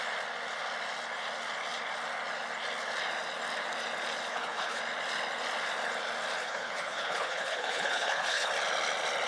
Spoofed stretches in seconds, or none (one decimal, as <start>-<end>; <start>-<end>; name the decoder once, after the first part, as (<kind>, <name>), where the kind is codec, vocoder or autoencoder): 4.3-4.8 (codec, HILCodec); 6.4-8.5